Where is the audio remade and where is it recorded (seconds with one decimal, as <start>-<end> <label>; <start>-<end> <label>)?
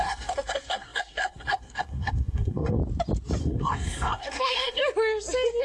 0.0-2.8 remade; 2.8-3.4 recorded; 3.4-4.8 remade; 4.8-5.6 recorded